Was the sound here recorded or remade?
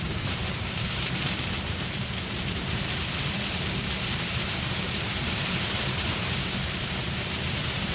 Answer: remade